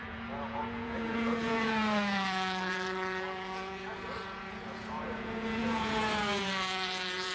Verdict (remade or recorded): remade